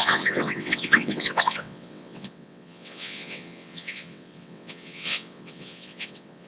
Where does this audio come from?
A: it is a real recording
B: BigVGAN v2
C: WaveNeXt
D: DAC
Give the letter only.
C